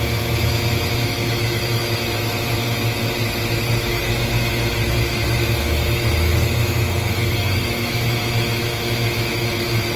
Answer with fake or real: fake